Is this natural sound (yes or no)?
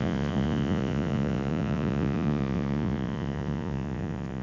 no